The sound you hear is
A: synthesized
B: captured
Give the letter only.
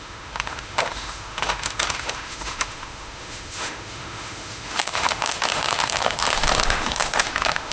A